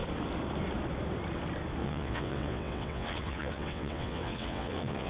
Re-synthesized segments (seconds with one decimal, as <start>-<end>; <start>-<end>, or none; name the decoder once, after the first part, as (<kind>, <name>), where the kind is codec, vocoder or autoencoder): 1.8-5.1 (vocoder, WaveNeXt)